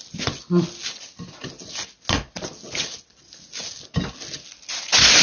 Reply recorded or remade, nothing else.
recorded